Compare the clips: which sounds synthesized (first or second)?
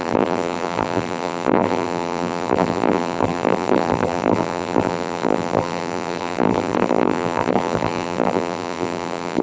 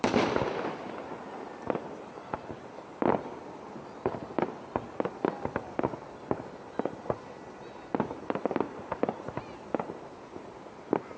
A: first